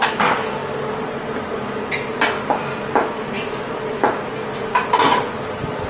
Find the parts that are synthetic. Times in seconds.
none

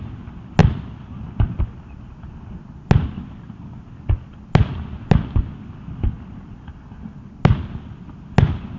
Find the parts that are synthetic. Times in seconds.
none

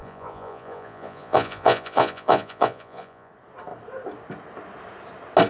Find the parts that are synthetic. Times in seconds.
0.0-3.3 (vocoder, Vocos)

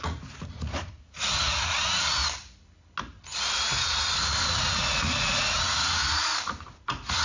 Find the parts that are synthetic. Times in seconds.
0.0-2.2 (vocoder, Vocos); 4.4-7.2